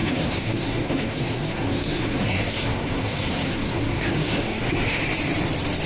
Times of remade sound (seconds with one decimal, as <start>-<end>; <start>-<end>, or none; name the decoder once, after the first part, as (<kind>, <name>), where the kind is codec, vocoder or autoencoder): 0.0-5.0 (codec, SNAC)

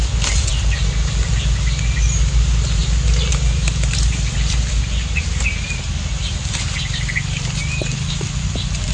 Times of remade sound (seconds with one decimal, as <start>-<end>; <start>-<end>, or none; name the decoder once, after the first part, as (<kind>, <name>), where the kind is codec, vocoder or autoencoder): none

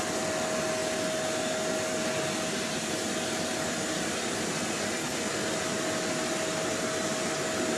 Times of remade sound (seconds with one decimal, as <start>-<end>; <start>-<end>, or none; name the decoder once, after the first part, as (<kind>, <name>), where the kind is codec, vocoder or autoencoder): none

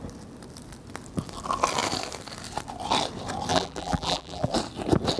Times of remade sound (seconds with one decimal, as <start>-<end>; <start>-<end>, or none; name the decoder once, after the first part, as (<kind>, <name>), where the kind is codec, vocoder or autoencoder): 3.5-4.5 (vocoder, BigVGAN v2)

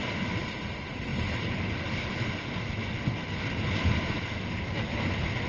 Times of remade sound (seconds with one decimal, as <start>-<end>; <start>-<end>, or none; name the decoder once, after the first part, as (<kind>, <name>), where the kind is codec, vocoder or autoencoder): none

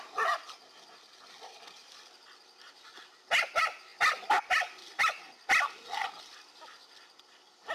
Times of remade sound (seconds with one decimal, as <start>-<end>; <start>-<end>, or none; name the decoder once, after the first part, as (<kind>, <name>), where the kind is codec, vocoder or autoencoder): none

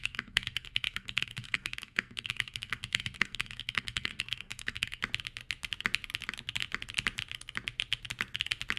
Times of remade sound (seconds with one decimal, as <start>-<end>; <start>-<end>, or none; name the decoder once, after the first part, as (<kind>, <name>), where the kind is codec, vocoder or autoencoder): 0.0-5.0 (codec, SNAC)